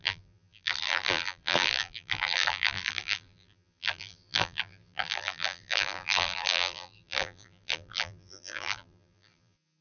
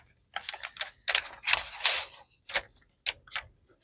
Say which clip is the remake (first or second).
first